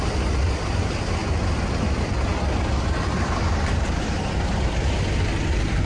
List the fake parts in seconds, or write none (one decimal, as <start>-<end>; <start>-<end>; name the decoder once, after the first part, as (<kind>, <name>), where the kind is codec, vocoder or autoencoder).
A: 0.0-1.2 (vocoder, BigVGAN v2); 2.0-5.9